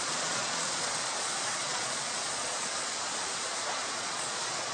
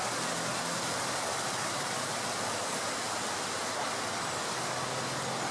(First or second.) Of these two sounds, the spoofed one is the first